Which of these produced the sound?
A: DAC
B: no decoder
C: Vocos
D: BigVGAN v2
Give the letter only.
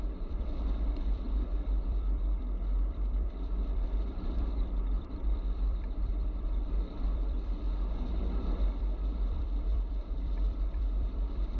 D